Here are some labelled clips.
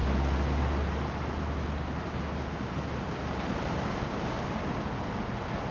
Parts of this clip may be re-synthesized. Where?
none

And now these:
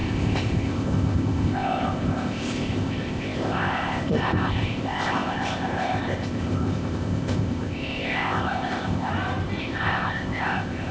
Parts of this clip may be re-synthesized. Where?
0.0-9.1 (codec, ZipCodec); 9.6-10.9

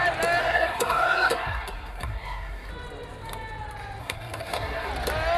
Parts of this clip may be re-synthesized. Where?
0.4-2.7 (codec, SNAC); 4.0-4.9

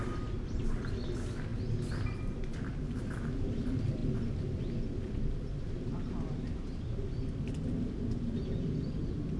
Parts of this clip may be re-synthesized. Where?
none

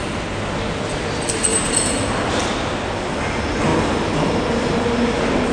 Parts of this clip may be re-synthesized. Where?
none

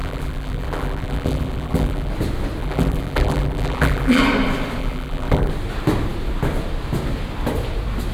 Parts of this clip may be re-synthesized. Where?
0.0-2.1 (vocoder, BigVGAN v2); 2.6-4.2; 4.8-5.5

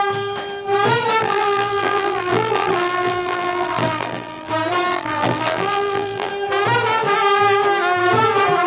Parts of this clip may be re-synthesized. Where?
1.2-4.5 (vocoder, BigVGAN v2); 4.9-6.3

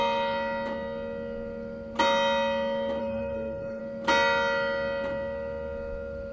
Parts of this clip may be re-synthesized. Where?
3.0-3.8 (codec, SNAC)